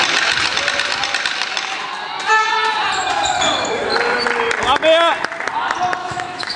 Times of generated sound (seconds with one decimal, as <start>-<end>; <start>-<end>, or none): 6.0-6.6